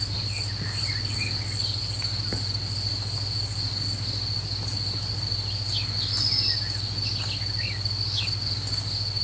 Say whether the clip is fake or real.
real